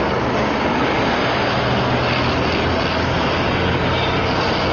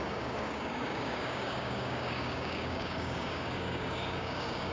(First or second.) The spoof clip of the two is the second